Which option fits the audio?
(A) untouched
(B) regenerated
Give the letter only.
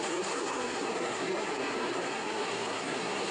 B